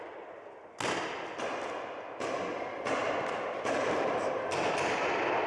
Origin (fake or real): real